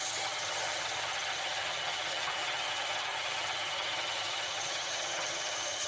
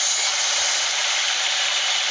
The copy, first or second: first